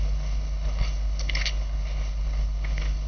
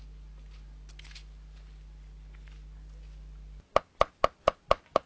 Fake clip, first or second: first